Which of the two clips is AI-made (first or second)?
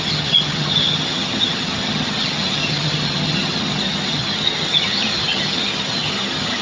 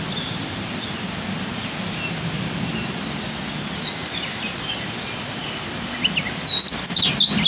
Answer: first